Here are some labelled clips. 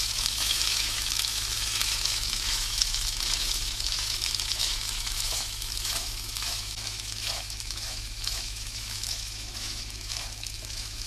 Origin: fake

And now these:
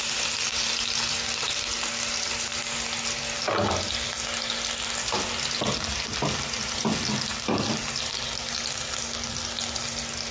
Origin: real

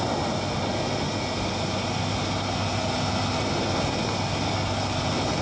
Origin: real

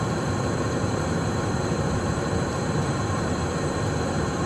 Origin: fake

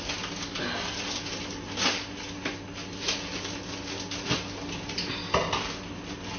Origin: real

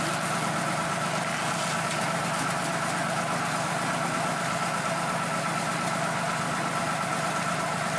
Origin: real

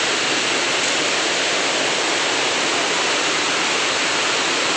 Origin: real